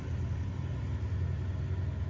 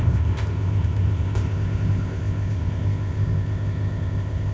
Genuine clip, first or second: first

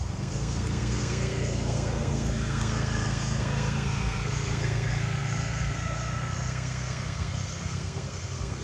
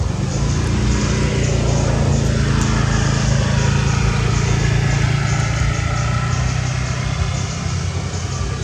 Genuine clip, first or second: second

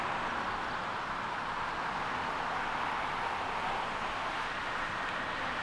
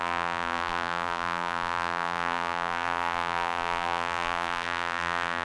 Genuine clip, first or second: first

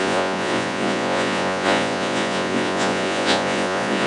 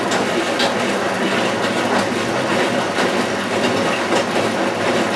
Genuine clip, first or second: second